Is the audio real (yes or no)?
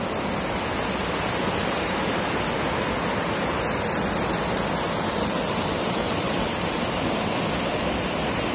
yes